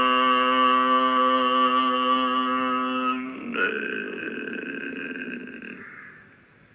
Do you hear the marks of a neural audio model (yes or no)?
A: no